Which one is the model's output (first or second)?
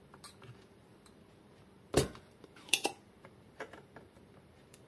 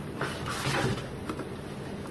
first